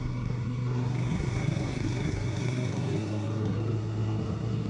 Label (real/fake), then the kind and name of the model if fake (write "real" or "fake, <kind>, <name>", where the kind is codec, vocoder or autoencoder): fake, codec, SNAC